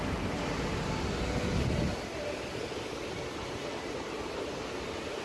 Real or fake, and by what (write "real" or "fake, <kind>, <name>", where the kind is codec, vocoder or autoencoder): real